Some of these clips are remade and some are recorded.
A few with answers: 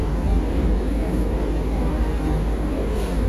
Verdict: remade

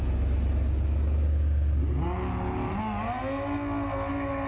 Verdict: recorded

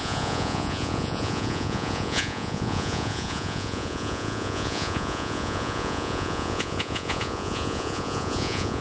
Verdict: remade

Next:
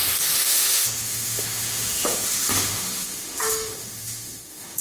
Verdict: remade